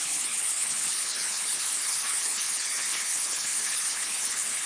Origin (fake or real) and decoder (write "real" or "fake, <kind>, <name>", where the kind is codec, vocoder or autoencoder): fake, codec, HILCodec